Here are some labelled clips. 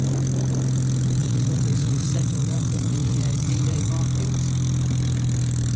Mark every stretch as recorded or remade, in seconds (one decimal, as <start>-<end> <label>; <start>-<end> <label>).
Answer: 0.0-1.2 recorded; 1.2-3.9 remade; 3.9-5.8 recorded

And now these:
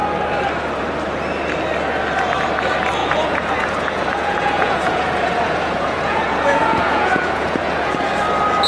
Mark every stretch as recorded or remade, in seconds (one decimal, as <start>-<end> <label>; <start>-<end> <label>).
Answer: 0.0-3.0 recorded; 3.0-8.1 remade; 8.1-8.7 recorded

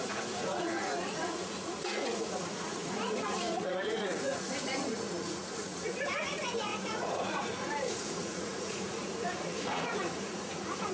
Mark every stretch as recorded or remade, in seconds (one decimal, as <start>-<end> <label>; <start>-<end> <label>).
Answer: 0.0-10.9 remade